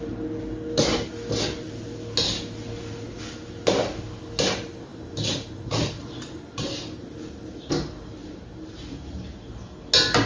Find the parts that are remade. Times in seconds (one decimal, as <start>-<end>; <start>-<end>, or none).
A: 4.9-6.8; 8.2-9.4